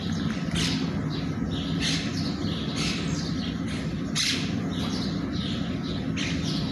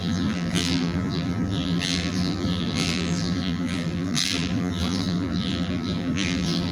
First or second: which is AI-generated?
second